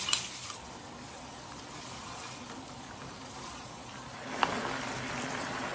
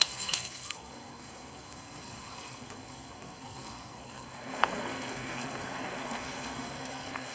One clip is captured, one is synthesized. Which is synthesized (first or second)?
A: second